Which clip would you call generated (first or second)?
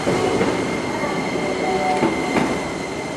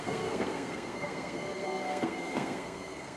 second